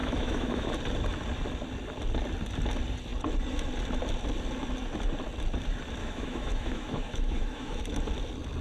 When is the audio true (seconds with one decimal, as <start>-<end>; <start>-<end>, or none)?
0.7-6.0; 7.8-8.6